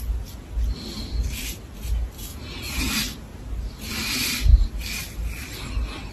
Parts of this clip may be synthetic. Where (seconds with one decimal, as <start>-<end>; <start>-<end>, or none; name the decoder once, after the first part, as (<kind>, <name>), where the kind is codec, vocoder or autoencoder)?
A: 2.3-2.9 (vocoder, Vocos)